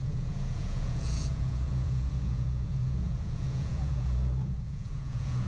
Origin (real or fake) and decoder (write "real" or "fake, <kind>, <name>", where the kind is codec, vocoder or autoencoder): fake, vocoder, Vocos